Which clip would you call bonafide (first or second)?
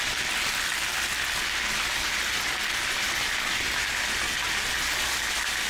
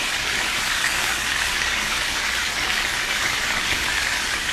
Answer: first